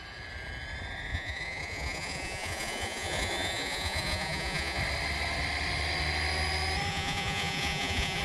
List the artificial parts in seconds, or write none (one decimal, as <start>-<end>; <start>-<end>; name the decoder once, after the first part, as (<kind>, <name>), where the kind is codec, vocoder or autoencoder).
1.1-4.8 (vocoder, Vocos); 6.9-8.2